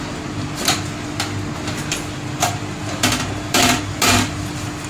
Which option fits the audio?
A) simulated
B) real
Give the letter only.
B